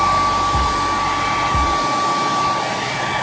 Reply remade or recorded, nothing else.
recorded